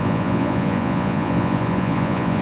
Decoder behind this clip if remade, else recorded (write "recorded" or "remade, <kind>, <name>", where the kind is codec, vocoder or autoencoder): remade, vocoder, Vocos